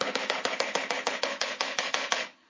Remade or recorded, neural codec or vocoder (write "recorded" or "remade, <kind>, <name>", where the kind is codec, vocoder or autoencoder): remade, codec, HILCodec